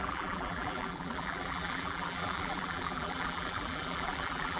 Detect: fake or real fake